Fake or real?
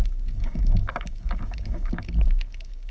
fake